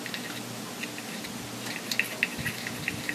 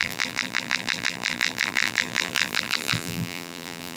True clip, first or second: first